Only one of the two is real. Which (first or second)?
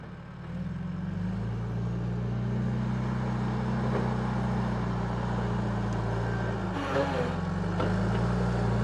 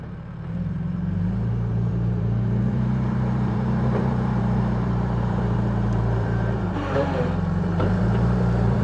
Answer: first